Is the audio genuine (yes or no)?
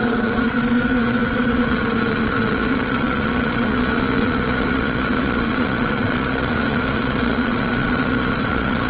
no